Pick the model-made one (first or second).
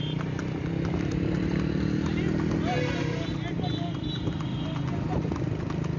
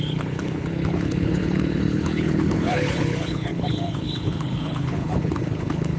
second